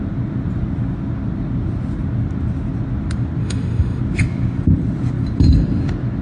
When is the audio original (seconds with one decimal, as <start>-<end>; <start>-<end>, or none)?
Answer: 0.0-3.4; 4.0-6.2